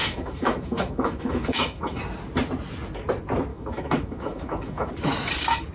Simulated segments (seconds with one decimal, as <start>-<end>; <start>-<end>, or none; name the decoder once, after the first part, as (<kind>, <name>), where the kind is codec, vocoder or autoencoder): 0.0-2.0 (autoencoder, DAC-VAE); 3.5-4.9